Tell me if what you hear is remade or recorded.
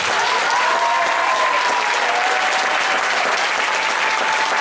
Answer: recorded